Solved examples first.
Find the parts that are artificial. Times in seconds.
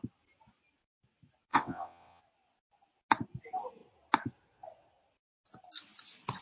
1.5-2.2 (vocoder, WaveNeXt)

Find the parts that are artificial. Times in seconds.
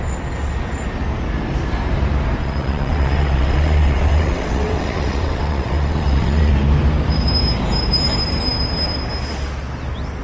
2.4-6.5 (vocoder, WaveNeXt)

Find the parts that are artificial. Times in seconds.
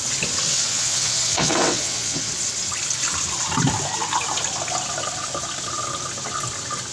0.5-2.3 (vocoder, WaveNeXt)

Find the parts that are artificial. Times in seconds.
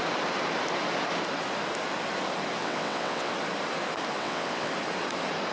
2.6-3.3 (vocoder, WaveNeXt); 4.2-4.7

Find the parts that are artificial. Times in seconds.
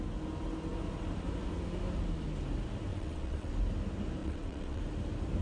2.9-3.5 (vocoder, WaveNeXt); 4.2-4.8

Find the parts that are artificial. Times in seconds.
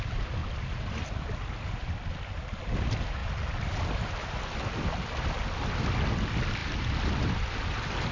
none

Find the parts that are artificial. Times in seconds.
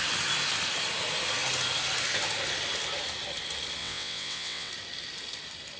3.8-4.7 (vocoder, WaveNeXt)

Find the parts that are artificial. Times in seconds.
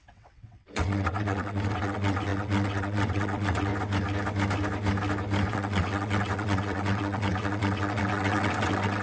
0.0-3.7 (vocoder, WaveNeXt); 5.5-9.0